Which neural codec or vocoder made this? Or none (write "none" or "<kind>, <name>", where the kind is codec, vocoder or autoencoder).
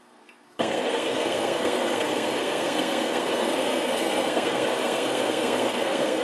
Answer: codec, SNAC